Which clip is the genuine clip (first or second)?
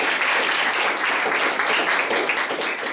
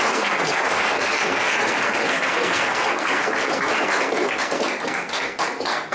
first